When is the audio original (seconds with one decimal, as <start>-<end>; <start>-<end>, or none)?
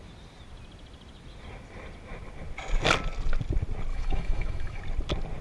0.0-3.9; 4.8-5.4